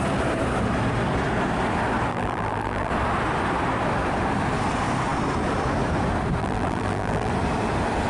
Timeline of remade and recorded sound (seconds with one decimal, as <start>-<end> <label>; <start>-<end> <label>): 0.0-2.1 recorded; 2.1-2.9 remade; 2.9-6.4 recorded; 6.4-7.3 remade; 7.3-8.1 recorded